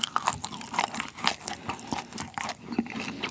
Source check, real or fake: real